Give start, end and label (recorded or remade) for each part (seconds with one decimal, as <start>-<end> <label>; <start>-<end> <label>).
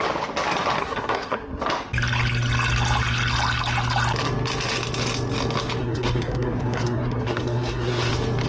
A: 0.0-0.8 recorded; 0.8-1.6 remade; 1.6-5.8 recorded; 5.8-8.1 remade; 8.1-8.5 recorded